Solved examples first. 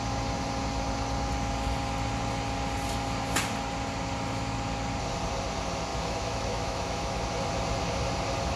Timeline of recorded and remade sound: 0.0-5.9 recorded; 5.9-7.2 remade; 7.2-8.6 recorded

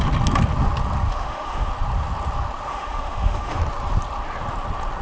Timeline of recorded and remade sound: 0.0-1.1 recorded; 1.1-1.7 remade; 1.7-2.7 recorded; 2.7-3.6 remade; 3.6-5.0 recorded

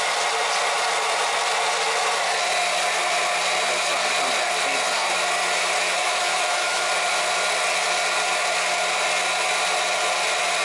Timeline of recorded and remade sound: 0.0-6.0 recorded; 6.0-6.9 remade; 6.9-10.6 recorded

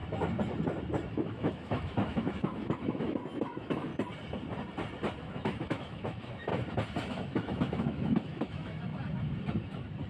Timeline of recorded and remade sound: 0.0-1.1 recorded; 1.1-3.9 remade; 3.9-5.2 recorded; 5.2-6.5 remade; 6.5-7.0 recorded; 7.0-8.9 remade; 8.9-10.1 recorded

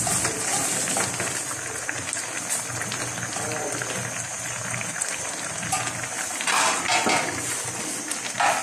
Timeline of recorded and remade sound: 0.0-8.6 recorded